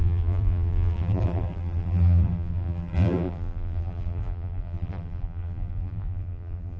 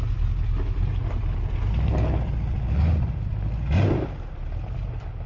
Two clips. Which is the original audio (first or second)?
second